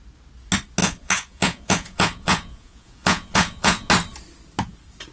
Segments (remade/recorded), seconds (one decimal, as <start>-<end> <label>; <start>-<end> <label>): 0.0-0.8 recorded; 0.8-3.9 remade; 3.9-5.1 recorded